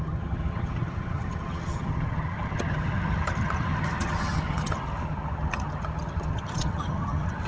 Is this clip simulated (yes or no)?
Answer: yes